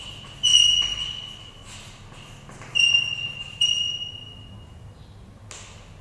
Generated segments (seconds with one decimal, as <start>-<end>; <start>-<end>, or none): none